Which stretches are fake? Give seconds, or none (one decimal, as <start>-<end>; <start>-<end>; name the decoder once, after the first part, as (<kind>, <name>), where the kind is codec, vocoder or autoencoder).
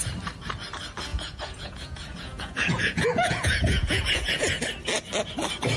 1.1-4.6 (vocoder, Vocos)